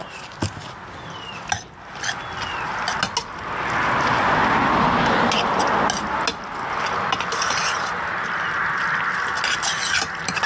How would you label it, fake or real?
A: real